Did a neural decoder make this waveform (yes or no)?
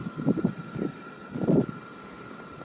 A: no